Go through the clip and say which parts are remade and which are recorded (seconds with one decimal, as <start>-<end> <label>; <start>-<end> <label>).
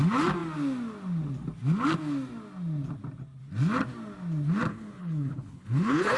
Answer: 0.0-4.7 recorded; 4.7-6.2 remade